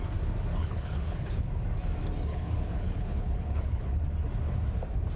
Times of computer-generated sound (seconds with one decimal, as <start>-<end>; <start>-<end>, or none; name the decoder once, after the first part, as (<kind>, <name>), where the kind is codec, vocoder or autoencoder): 0.6-1.5 (codec, HILCodec); 2.3-4.0